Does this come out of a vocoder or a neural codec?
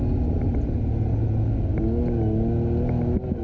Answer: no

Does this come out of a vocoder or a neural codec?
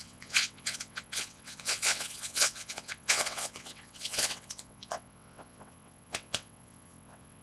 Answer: yes